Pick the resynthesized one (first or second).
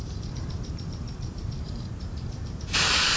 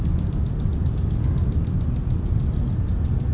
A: first